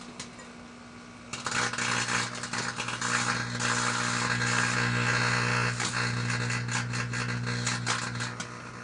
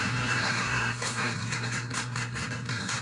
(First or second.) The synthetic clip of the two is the second